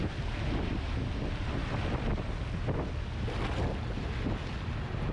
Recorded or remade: recorded